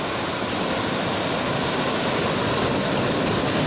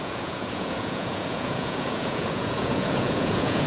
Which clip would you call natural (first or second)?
first